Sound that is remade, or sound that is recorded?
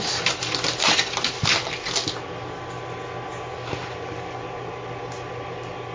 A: recorded